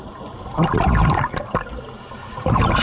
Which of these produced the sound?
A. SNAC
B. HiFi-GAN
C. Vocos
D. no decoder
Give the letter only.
D